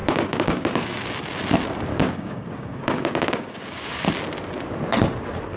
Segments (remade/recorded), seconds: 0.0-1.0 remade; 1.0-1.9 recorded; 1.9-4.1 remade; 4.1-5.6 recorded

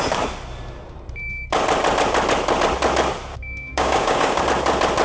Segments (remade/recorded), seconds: 0.0-3.3 recorded; 3.3-4.4 remade; 4.4-5.0 recorded

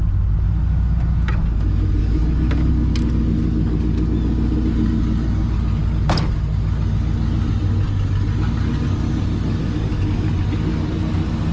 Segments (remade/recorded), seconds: 0.0-2.0 recorded; 2.0-2.7 remade; 2.7-9.6 recorded; 9.6-10.3 remade; 10.3-11.5 recorded

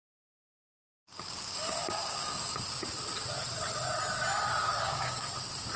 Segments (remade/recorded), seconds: 0.0-0.9 recorded; 0.9-2.6 remade; 2.6-4.6 recorded; 4.6-5.3 remade; 5.3-5.8 recorded

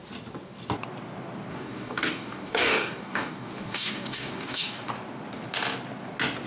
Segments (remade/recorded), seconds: 0.0-1.5 recorded; 1.5-4.9 remade; 4.9-6.5 recorded